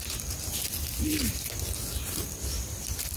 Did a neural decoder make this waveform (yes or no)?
no